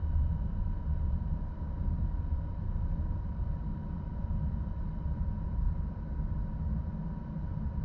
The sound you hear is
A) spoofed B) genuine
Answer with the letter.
B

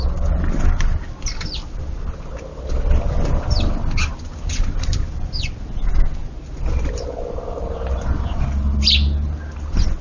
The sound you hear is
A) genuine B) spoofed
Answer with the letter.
A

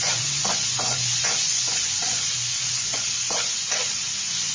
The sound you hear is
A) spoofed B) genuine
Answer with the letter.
A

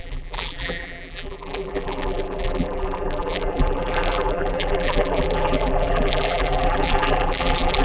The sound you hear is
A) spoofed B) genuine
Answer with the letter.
A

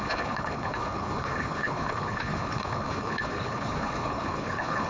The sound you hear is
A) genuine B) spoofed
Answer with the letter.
B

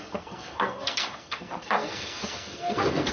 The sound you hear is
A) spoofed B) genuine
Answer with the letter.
A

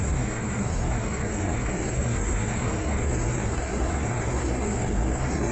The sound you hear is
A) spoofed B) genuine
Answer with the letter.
A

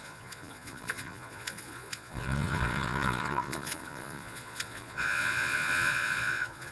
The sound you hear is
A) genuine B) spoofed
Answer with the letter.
B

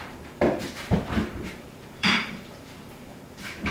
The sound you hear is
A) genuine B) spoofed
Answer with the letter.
B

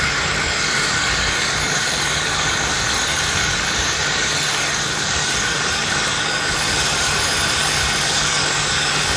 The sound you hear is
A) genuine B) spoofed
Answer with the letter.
B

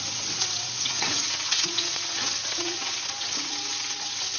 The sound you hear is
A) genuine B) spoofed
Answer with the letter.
B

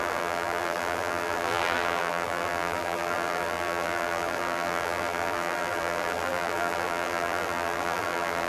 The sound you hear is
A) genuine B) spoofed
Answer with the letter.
B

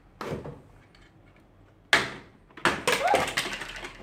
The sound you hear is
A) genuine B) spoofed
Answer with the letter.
A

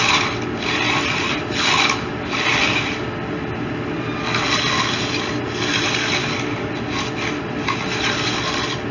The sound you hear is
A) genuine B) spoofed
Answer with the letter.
A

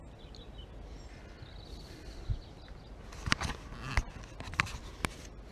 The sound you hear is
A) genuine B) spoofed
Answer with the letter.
A